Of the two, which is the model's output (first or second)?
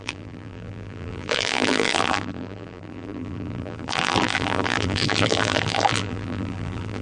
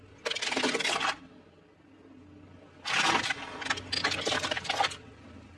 first